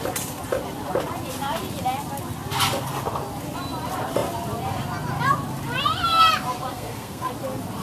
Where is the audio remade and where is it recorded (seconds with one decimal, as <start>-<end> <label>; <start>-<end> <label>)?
0.0-6.7 recorded; 6.7-7.3 remade; 7.3-7.8 recorded